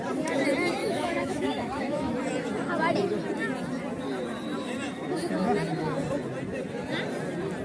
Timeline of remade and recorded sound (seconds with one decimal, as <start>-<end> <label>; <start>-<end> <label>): 0.0-0.8 recorded; 0.8-2.1 remade; 2.1-7.6 recorded